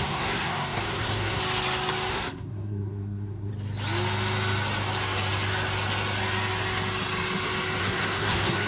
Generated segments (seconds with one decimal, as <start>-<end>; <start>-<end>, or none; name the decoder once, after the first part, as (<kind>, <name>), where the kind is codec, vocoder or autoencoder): 0.0-1.4 (codec, SNAC); 2.1-3.5; 7.8-8.7